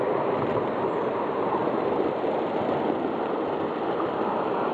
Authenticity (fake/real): real